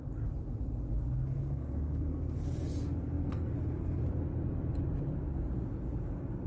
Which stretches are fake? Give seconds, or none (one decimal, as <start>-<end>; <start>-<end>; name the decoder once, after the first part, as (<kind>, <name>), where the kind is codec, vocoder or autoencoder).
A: 0.9-4.0 (codec, SNAC)